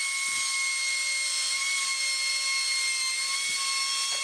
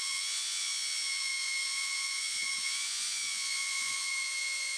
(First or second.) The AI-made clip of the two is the second